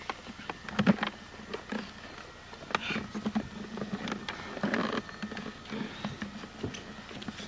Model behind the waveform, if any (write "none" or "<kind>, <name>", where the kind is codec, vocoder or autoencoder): none